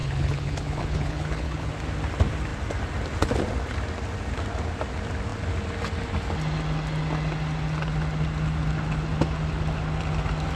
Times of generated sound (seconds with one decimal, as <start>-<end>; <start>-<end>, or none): 0.0-1.7